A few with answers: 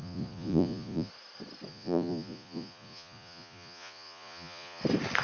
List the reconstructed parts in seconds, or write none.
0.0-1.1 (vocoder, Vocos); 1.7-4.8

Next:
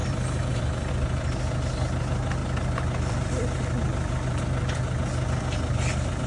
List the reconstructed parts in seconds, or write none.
0.0-0.9 (vocoder, BigVGAN v2)